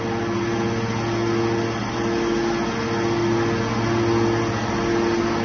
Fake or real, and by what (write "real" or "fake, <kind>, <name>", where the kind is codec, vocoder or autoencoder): real